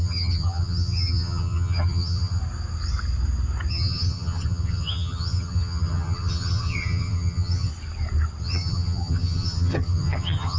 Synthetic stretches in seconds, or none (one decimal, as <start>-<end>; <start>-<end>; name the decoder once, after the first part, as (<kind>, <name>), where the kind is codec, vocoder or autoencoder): 0.0-2.4 (vocoder, HiFi-GAN); 3.7-7.7; 8.4-10.6